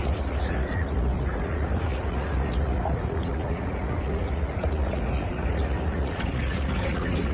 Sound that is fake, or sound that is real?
fake